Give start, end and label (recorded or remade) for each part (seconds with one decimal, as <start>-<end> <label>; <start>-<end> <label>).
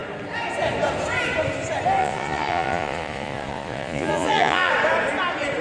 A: 0.0-2.0 recorded; 2.0-4.7 remade; 4.7-5.6 recorded